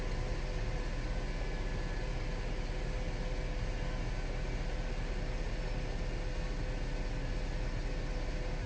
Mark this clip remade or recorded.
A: recorded